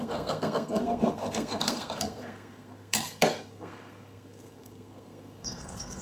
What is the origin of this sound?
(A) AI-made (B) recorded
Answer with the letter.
A